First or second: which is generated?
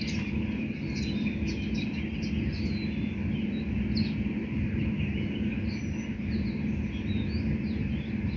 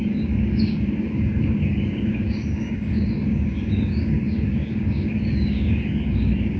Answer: second